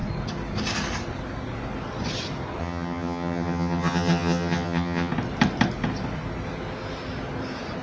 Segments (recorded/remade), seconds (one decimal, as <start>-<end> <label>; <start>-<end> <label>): 0.0-2.6 recorded; 2.6-5.1 remade; 5.1-7.8 recorded